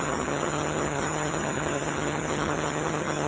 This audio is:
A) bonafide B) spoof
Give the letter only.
B